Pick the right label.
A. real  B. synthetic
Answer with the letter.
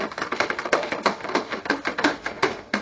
B